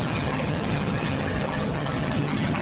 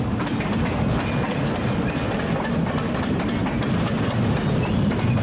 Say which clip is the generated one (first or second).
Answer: first